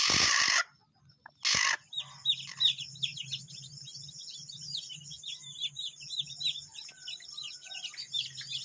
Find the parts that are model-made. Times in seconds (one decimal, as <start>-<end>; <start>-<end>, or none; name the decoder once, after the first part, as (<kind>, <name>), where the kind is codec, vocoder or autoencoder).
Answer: none